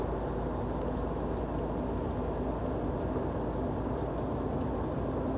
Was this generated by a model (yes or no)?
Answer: no